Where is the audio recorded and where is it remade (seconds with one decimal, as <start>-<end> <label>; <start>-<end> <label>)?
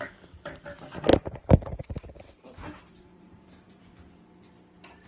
0.0-1.1 recorded; 1.1-3.8 remade; 3.8-5.1 recorded